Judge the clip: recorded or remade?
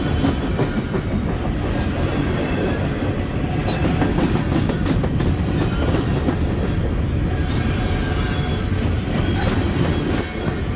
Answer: recorded